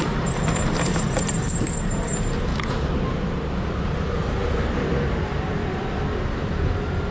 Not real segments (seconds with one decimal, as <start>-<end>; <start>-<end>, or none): 0.0-2.5; 3.1-5.6